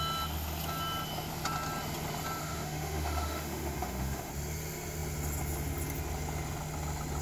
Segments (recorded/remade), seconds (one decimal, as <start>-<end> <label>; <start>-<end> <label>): 0.0-2.4 recorded; 2.4-4.3 remade; 4.3-7.2 recorded